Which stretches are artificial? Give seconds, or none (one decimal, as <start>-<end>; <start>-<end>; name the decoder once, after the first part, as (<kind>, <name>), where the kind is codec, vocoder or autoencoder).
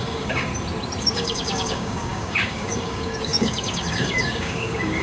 0.0-0.5 (codec, DAC); 1.0-5.0